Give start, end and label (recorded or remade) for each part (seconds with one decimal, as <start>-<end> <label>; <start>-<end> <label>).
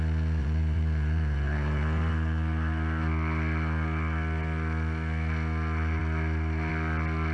0.0-0.4 recorded; 0.4-2.1 remade; 2.1-7.3 recorded